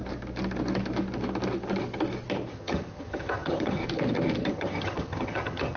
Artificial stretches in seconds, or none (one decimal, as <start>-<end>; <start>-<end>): 2.5-3.8; 4.5-5.8